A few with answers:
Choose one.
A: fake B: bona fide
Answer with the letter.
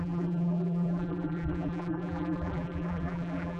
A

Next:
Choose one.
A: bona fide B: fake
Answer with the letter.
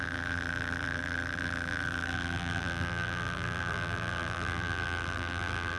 B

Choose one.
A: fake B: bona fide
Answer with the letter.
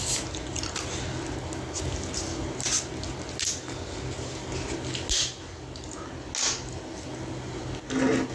B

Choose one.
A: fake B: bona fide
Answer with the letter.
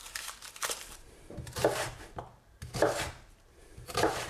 A